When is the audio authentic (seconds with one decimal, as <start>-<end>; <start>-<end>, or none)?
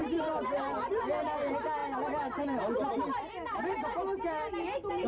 0.0-5.1